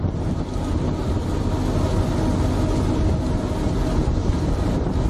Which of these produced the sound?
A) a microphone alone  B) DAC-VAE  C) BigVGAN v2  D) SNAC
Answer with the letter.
A